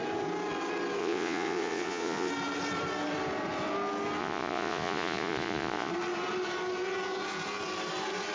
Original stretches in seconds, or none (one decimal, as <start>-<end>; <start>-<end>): 0.0-1.0; 2.3-4.2; 5.9-8.3